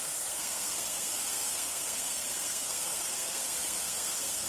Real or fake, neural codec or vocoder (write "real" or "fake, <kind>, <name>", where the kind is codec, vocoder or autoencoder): fake, codec, SNAC